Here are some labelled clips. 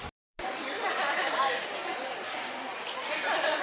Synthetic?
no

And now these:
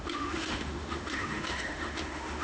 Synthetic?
yes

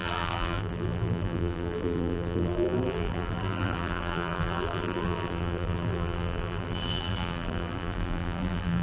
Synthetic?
yes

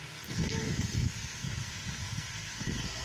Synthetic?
yes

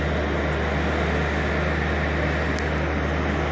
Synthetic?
no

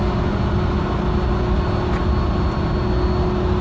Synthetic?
no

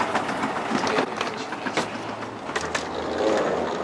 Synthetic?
no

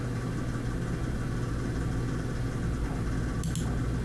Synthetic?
no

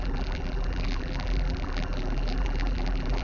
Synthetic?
yes